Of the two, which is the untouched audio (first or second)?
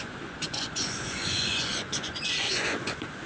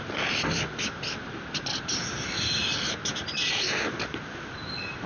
second